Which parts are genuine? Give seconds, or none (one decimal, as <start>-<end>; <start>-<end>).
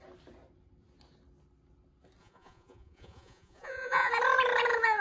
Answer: 0.0-2.2; 4.1-5.0